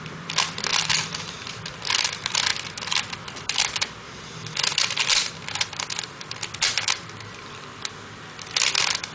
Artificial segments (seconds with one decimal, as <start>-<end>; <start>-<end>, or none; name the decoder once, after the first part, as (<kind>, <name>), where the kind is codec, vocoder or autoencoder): 0.0-0.7 (vocoder, BigVGAN v2); 1.3-9.1